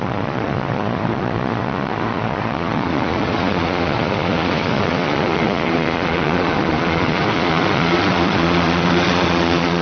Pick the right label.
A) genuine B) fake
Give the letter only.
B